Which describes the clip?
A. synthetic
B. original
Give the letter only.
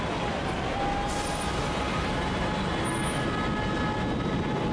B